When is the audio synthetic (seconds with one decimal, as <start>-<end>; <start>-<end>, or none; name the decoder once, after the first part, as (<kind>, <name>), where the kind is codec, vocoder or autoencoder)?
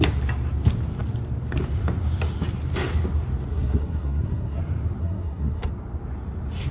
3.5-4.6 (codec, SNAC); 5.0-5.7